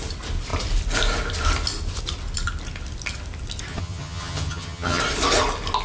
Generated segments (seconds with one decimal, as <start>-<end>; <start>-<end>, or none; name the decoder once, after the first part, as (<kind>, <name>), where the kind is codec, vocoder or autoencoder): 3.7-5.0 (vocoder, HiFi-GAN)